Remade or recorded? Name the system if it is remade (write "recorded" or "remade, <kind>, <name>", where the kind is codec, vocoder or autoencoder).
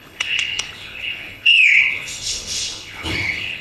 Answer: remade, codec, HILCodec